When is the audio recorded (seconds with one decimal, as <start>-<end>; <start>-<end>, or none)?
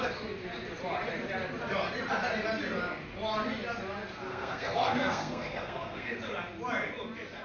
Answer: 0.0-4.3; 6.2-7.4